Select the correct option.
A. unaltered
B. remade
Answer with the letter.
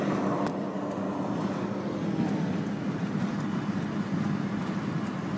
A